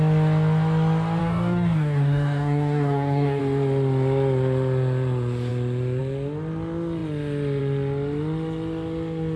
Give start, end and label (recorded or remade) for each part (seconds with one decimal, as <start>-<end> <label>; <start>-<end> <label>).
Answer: 0.0-1.2 recorded; 1.2-3.4 remade; 3.4-9.4 recorded